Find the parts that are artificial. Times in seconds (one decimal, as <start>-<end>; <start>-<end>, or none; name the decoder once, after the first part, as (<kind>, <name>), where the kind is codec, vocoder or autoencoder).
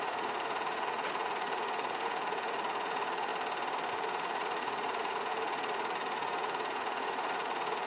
0.0-3.3 (vocoder, Vocos); 3.9-7.9